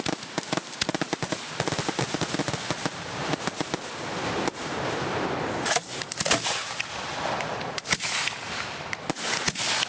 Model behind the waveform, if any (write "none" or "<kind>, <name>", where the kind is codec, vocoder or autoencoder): none